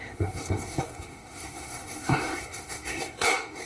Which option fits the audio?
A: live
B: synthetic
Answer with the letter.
B